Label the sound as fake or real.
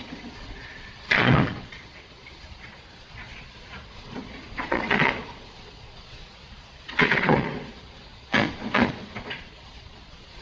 fake